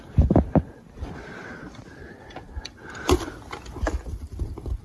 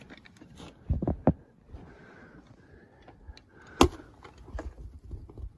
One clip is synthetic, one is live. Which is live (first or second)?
second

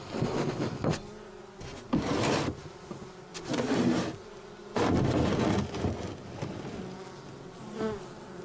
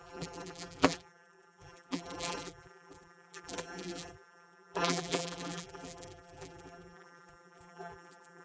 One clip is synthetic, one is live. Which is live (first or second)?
first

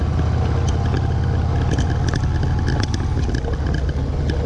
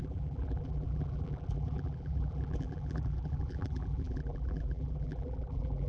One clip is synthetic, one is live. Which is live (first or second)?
first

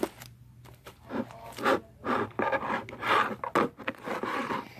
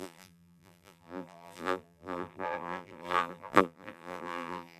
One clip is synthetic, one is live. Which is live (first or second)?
first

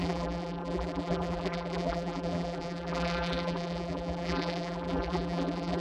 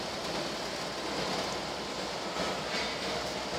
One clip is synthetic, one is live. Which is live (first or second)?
second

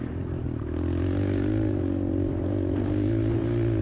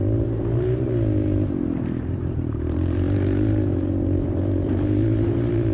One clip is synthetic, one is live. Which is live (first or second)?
first